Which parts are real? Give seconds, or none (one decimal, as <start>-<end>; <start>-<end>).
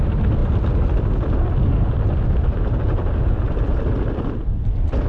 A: 0.0-5.1